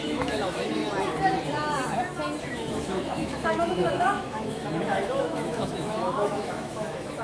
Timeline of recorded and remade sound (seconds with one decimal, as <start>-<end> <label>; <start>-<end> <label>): 0.0-0.8 remade; 0.8-2.4 recorded; 2.4-7.2 remade